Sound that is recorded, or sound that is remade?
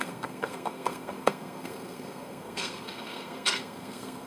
remade